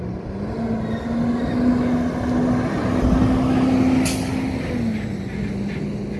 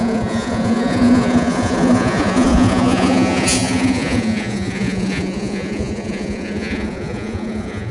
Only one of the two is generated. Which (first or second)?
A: second